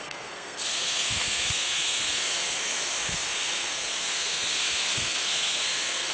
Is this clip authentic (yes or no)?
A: no